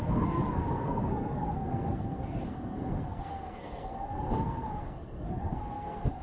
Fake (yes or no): yes